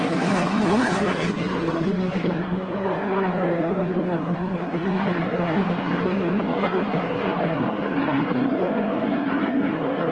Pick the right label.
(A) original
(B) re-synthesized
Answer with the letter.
B